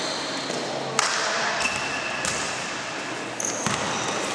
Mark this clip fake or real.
real